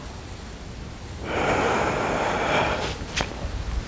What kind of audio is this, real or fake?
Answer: real